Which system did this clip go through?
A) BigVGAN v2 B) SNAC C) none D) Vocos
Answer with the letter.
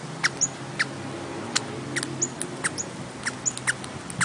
C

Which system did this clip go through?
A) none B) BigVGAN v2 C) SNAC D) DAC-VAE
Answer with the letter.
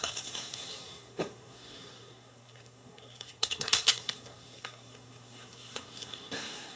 C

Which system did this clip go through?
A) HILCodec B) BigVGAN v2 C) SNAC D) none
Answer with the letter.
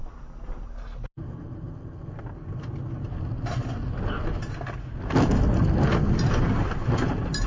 D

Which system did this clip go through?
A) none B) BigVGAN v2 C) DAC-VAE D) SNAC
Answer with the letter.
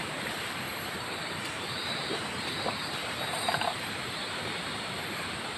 B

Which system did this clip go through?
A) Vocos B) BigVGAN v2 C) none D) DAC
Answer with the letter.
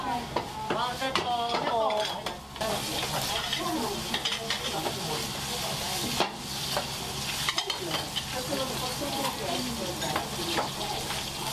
C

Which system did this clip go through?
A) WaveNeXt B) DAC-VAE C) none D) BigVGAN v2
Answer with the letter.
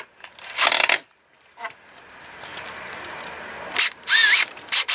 C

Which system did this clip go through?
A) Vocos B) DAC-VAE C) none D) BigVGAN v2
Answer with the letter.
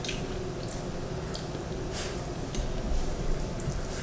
C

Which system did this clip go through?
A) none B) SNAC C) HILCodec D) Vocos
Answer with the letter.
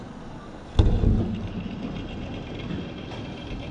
A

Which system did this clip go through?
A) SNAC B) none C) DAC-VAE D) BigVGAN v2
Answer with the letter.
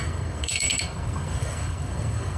A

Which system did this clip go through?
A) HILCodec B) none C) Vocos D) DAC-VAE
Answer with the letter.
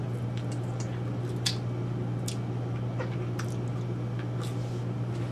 B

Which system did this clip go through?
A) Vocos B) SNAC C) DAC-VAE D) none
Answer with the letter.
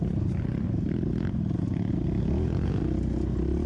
D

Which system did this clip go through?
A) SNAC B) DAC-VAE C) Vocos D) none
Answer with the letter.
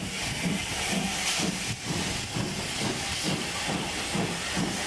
D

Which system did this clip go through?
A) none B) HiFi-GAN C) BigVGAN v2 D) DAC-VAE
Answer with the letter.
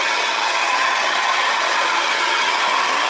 B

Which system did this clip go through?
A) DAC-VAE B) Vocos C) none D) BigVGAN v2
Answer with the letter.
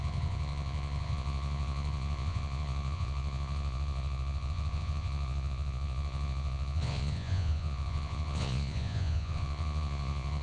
B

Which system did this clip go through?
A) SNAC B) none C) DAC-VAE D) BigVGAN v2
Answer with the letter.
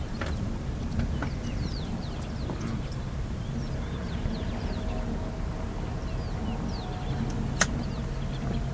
B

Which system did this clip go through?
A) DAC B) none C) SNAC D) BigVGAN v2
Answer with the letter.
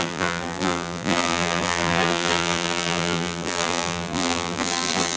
D